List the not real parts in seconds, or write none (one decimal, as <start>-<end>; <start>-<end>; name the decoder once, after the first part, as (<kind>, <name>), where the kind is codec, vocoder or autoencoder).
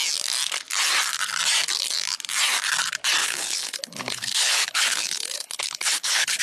3.2-6.4 (codec, HILCodec)